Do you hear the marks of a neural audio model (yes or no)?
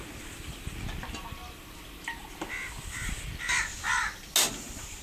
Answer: no